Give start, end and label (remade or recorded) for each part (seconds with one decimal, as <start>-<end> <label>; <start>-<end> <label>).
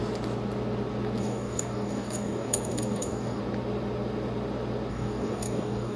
0.0-1.2 recorded; 1.2-3.4 remade; 3.4-4.9 recorded; 4.9-6.0 remade